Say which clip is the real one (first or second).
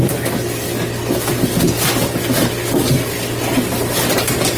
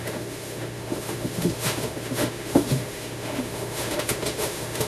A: first